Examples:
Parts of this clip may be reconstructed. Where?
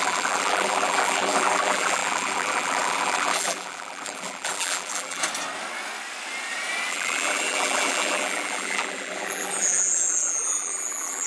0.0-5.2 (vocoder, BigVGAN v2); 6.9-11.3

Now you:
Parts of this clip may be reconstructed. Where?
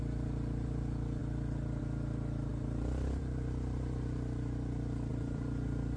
2.5-3.2 (vocoder, BigVGAN v2); 5.1-6.0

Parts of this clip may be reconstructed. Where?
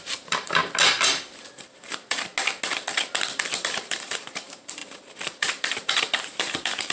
0.0-0.6 (vocoder, BigVGAN v2); 1.5-2.3; 3.7-6.9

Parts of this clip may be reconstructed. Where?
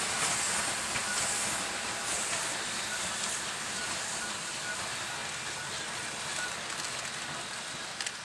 none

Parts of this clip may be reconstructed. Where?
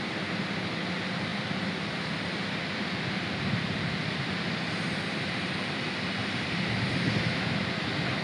1.3-5.2 (vocoder, BigVGAN v2); 6.2-7.7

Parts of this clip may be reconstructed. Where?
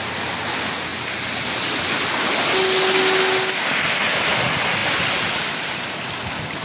none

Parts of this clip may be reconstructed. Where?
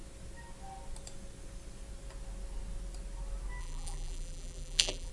3.6-5.1 (vocoder, BigVGAN v2)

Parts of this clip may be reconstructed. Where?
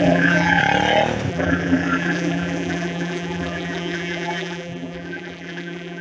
0.0-0.6 (vocoder, BigVGAN v2); 1.3-6.0